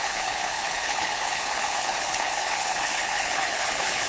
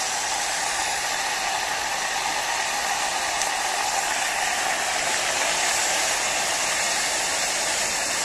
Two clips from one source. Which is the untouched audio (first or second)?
second